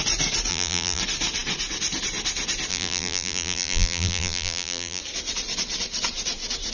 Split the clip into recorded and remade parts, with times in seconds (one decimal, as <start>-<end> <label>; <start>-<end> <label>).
0.0-0.5 recorded; 0.5-1.0 remade; 1.0-2.7 recorded; 2.7-5.0 remade; 5.0-6.7 recorded